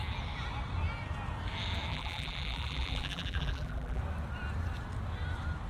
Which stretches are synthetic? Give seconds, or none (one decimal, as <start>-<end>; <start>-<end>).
1.9-4.0

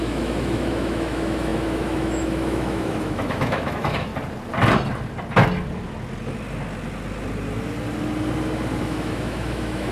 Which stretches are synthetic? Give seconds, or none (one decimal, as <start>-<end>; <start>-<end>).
0.0-4.1; 8.8-9.9

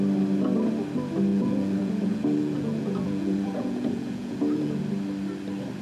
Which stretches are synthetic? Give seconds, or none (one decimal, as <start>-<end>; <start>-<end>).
1.3-4.8